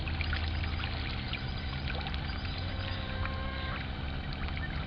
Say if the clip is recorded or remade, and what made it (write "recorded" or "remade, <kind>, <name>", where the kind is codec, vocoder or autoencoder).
recorded